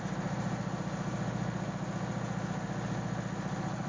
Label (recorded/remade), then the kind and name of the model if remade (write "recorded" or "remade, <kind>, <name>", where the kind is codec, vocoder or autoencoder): recorded